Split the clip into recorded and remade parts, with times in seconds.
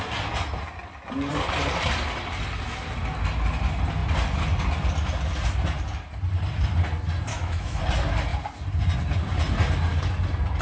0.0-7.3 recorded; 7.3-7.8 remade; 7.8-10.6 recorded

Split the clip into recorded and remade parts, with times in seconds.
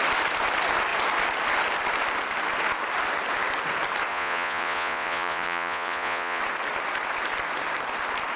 0.0-4.1 recorded; 4.1-6.4 remade; 6.4-8.4 recorded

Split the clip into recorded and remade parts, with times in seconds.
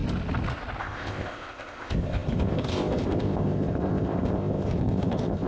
0.0-0.8 recorded; 0.8-5.5 remade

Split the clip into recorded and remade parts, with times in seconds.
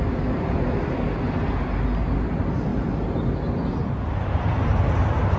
0.0-5.4 recorded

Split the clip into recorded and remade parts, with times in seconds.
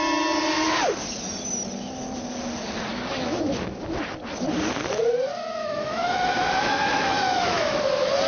0.0-2.9 recorded; 2.9-3.8 remade; 3.8-5.6 recorded; 5.6-7.8 remade; 7.8-8.3 recorded